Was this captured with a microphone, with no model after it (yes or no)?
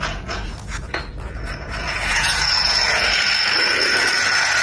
no